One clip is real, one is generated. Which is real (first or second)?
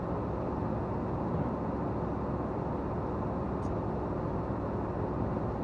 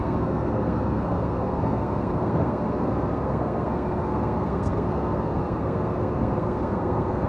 first